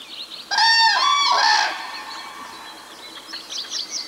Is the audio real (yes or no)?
yes